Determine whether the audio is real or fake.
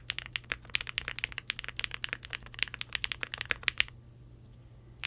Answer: real